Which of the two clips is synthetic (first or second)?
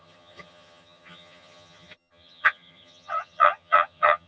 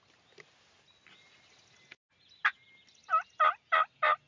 first